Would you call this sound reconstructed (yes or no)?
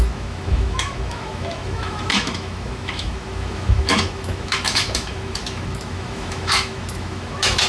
yes